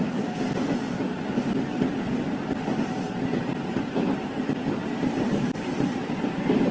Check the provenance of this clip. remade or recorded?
recorded